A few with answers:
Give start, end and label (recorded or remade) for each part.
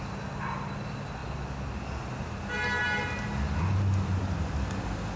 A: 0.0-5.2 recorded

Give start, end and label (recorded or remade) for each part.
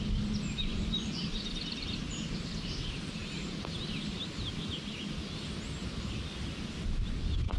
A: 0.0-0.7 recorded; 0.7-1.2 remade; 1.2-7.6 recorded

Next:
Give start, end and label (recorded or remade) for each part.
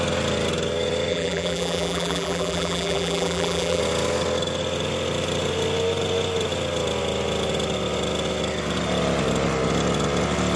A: 0.0-1.1 recorded; 1.1-3.8 remade; 3.8-10.6 recorded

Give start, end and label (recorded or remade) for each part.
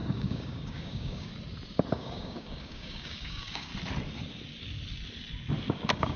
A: 0.0-1.3 remade; 1.3-1.9 recorded; 1.9-3.7 remade; 3.7-5.7 recorded; 5.7-6.2 remade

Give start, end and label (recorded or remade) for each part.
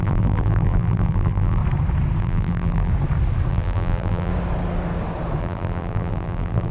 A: 0.0-1.6 remade; 1.6-2.2 recorded; 2.2-2.9 remade; 2.9-3.5 recorded; 3.5-4.3 remade; 4.3-5.4 recorded; 5.4-6.7 remade